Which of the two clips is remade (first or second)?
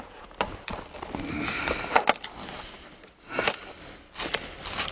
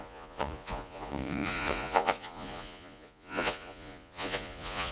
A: second